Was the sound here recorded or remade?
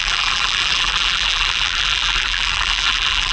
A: remade